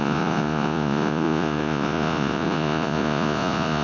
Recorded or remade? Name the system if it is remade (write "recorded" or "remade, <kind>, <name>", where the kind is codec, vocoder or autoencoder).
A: remade, vocoder, Vocos